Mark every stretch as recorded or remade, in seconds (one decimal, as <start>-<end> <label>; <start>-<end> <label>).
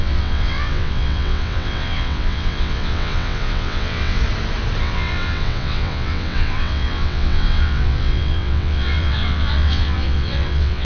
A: 0.0-4.2 remade; 4.2-4.8 recorded; 4.8-10.8 remade